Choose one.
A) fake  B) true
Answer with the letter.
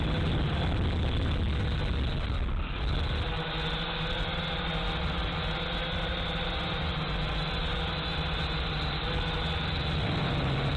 B